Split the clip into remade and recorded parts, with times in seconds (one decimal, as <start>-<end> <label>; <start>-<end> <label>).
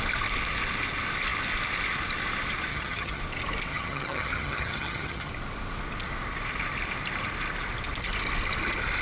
0.0-2.7 recorded; 2.7-3.2 remade; 3.2-3.7 recorded; 3.7-5.3 remade; 5.3-9.0 recorded